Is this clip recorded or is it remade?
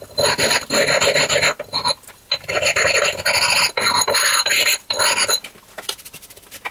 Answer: recorded